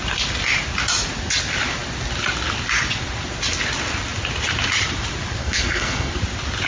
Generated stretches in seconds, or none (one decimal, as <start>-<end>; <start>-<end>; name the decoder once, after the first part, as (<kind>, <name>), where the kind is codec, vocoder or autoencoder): 5.4-6.1 (codec, SNAC)